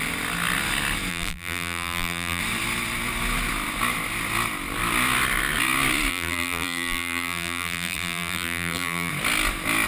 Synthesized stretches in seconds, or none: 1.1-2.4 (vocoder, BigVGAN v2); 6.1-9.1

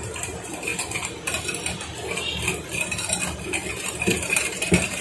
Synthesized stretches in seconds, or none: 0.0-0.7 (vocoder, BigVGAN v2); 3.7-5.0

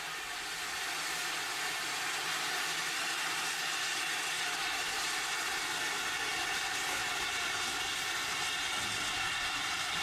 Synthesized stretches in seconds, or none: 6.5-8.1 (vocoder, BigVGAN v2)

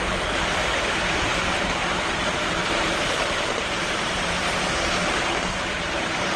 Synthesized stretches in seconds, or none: 1.3-1.9 (vocoder, BigVGAN v2); 2.6-4.6

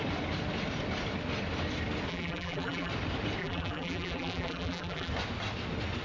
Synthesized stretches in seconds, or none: 2.1-2.9 (vocoder, BigVGAN v2); 3.4-5.1

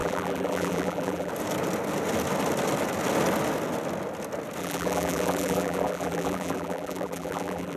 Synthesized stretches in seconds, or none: 0.0-1.3 (vocoder, BigVGAN v2); 4.6-7.8